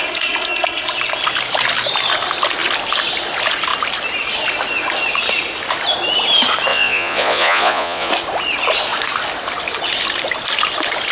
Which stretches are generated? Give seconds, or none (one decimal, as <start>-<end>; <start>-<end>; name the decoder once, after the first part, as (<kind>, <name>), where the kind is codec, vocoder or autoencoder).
6.7-8.1 (vocoder, Vocos)